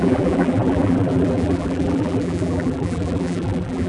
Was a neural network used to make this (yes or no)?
yes